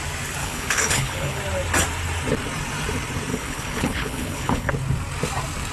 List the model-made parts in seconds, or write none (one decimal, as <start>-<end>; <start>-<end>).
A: 0.4-1.4; 3.3-4.7